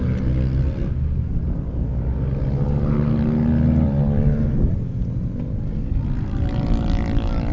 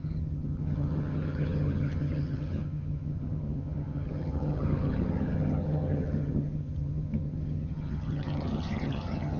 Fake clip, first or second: second